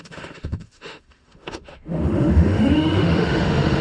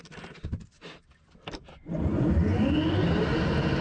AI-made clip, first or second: first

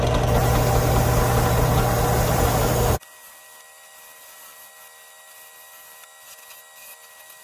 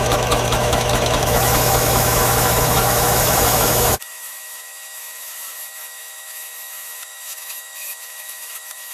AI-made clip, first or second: second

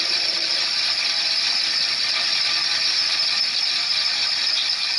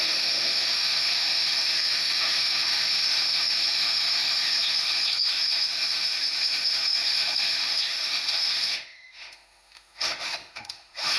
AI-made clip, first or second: second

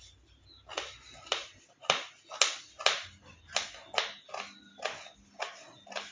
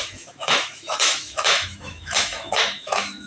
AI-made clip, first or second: second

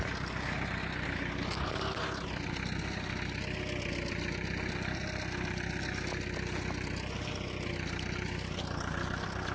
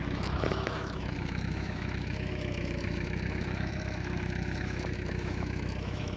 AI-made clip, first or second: second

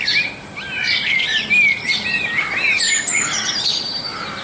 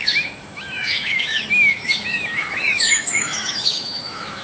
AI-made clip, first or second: second